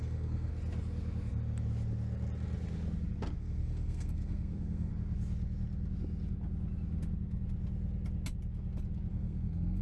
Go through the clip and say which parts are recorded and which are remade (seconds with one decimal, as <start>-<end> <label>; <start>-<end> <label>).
0.0-0.5 remade; 0.5-3.4 recorded; 3.4-4.9 remade; 4.9-9.1 recorded; 9.1-9.8 remade